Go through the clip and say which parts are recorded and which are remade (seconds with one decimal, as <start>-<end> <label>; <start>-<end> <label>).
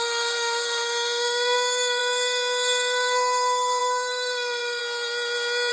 0.0-4.8 remade; 4.8-5.7 recorded